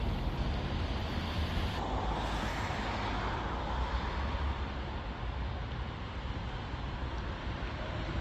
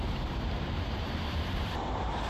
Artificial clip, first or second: second